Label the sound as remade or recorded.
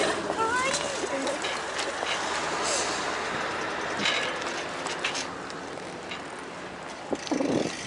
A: recorded